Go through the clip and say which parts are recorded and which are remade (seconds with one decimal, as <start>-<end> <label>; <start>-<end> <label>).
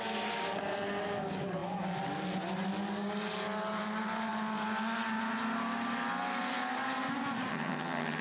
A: 0.0-7.5 recorded; 7.5-8.2 remade